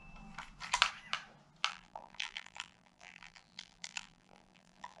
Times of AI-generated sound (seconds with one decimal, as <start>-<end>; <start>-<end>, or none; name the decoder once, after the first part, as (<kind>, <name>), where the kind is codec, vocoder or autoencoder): 1.7-5.0 (vocoder, BigVGAN v2)